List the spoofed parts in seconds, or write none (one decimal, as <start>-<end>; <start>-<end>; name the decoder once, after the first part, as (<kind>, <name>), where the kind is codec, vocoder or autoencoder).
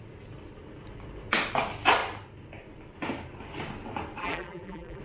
4.2-5.0 (vocoder, BigVGAN v2)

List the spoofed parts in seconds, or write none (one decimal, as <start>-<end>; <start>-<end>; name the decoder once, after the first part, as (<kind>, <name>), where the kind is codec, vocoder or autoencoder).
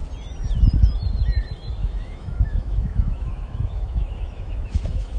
1.8-5.2 (autoencoder, DAC-VAE)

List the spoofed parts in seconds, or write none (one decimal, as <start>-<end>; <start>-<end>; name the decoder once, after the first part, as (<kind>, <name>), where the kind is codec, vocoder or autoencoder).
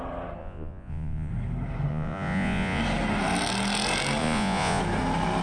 0.4-1.3 (vocoder, Vocos); 1.9-2.8; 4.2-4.8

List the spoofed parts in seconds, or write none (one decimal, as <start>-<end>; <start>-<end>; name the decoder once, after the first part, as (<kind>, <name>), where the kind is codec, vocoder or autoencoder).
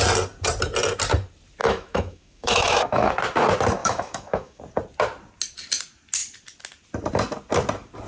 1.6-3.1 (autoencoder, DAC-VAE); 3.8-4.6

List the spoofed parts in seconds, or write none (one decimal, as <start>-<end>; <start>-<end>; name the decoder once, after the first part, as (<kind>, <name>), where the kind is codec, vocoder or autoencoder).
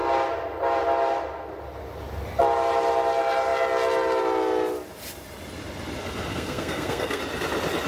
6.3-7.2 (codec, SNAC)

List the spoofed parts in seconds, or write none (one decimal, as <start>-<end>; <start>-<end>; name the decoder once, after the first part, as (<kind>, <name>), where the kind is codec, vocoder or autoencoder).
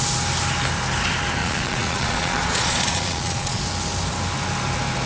1.4-3.6 (vocoder, Vocos)